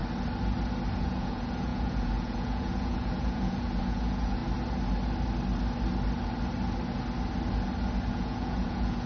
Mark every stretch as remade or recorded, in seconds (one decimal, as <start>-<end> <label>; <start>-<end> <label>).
0.0-1.0 recorded; 1.0-4.4 remade; 4.4-8.1 recorded; 8.1-9.1 remade